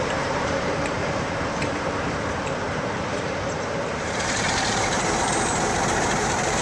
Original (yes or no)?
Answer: no